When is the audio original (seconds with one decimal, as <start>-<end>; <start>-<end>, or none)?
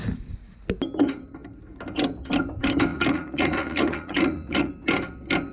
0.0-2.9; 4.7-5.5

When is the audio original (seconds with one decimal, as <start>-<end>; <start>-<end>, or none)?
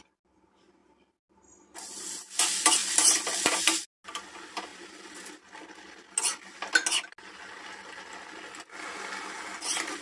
0.0-10.0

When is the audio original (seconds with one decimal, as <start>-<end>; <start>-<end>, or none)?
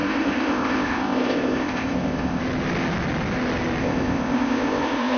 2.4-3.8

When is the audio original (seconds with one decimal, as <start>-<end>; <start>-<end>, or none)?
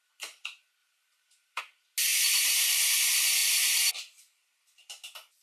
0.0-0.8; 1.6-2.1; 2.8-3.4; 3.9-5.4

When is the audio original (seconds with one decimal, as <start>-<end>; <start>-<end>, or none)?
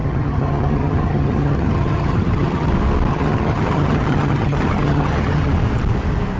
2.7-3.1; 5.5-6.4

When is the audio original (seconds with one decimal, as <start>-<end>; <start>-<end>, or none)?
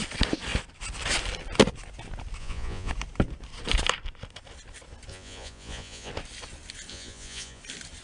0.0-2.4; 2.9-5.1; 6.1-6.9; 7.6-8.0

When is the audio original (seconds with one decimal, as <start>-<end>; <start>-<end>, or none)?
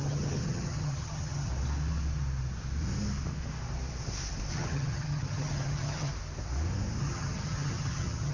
1.5-4.5; 6.1-7.0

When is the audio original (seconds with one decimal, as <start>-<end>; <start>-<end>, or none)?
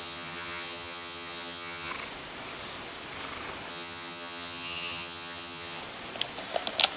1.9-3.7; 5.8-7.0